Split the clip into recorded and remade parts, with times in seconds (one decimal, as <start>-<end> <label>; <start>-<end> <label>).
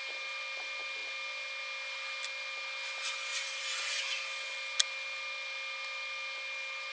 0.0-3.3 recorded; 3.3-4.0 remade; 4.0-6.9 recorded